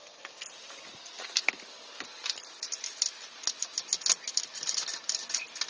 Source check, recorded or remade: recorded